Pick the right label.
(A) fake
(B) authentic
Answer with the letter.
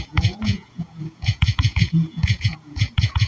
A